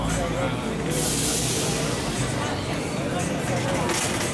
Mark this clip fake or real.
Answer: real